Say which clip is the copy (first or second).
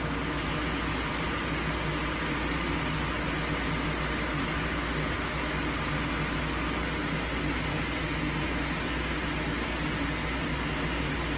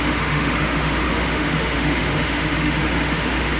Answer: second